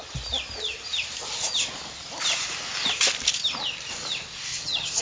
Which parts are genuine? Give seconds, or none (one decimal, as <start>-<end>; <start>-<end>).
0.0-4.5